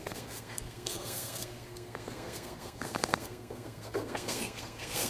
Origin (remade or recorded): remade